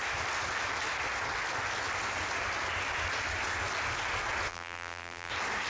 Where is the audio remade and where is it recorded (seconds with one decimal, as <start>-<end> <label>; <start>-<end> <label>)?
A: 0.0-4.5 recorded; 4.5-5.3 remade; 5.3-5.7 recorded

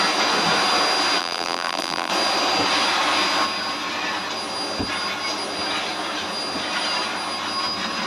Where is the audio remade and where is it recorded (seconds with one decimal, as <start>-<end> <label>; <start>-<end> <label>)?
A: 0.0-1.2 recorded; 1.2-2.1 remade; 2.1-8.1 recorded

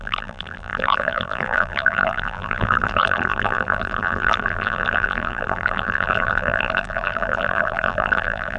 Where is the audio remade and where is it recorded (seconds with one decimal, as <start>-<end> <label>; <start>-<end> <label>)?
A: 0.0-8.6 remade

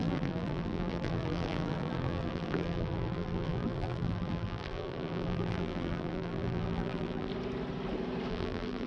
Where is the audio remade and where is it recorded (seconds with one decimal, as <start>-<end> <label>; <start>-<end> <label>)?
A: 0.0-7.3 remade; 7.3-8.3 recorded; 8.3-8.9 remade

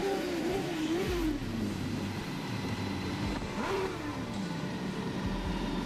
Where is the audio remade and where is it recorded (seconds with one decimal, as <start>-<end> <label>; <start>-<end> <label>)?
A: 0.0-5.9 remade

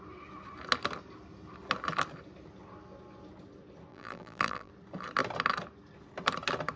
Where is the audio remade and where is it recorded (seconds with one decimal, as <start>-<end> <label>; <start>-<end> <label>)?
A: 0.0-3.9 recorded; 3.9-4.7 remade; 4.7-6.8 recorded

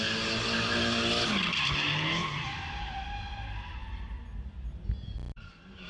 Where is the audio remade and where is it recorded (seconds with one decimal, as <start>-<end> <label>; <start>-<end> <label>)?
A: 0.0-5.9 recorded

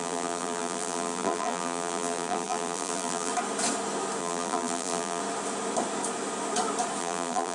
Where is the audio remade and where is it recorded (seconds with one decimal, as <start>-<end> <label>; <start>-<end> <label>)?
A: 0.0-3.3 remade; 3.3-4.2 recorded; 4.2-5.2 remade; 5.2-7.0 recorded; 7.0-7.5 remade